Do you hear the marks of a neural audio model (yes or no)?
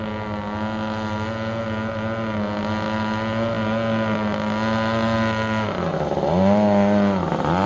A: no